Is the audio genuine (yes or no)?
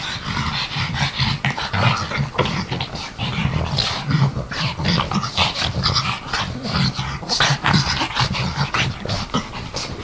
yes